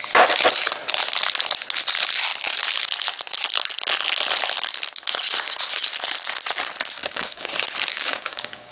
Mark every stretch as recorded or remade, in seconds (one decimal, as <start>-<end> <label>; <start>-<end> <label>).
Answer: 0.0-7.0 recorded; 7.0-7.5 remade; 7.5-7.9 recorded; 7.9-8.7 remade